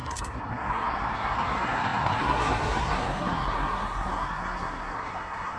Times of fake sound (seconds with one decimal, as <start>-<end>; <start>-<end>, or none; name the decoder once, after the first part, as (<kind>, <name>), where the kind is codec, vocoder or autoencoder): 0.0-5.6 (codec, SNAC)